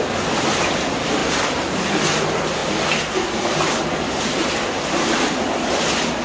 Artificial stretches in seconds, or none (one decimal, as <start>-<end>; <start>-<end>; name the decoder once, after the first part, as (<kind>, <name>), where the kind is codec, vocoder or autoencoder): 1.2-2.0 (vocoder, BigVGAN v2)